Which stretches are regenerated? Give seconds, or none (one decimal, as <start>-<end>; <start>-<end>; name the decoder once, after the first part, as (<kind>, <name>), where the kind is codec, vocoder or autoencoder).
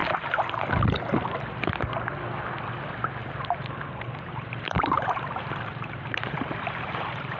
0.0-0.7 (vocoder, BigVGAN v2); 3.2-7.4